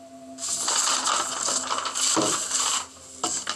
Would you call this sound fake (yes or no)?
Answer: no